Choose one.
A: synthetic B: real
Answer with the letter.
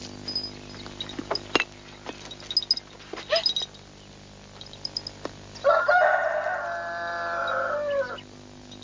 B